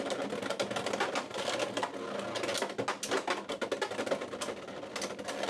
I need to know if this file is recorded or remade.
recorded